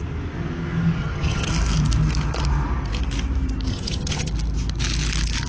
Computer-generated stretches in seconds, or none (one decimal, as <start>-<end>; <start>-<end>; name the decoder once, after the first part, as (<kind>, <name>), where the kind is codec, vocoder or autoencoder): 1.0-1.5 (vocoder, HiFi-GAN); 3.7-4.3